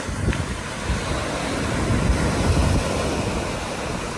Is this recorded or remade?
recorded